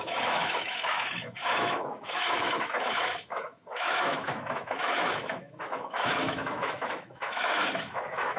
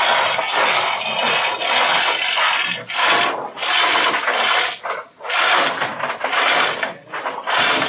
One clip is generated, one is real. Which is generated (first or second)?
first